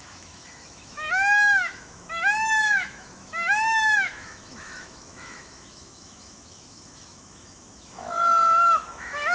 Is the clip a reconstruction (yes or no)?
yes